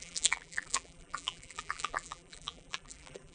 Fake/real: fake